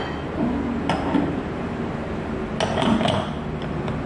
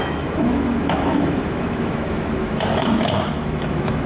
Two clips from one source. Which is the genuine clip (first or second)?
first